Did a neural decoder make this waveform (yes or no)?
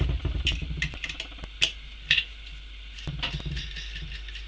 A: no